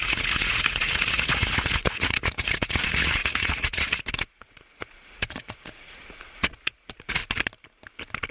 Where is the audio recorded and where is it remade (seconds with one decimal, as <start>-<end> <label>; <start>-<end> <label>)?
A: 0.0-7.2 remade; 7.2-8.3 recorded